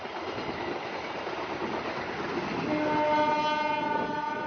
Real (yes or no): yes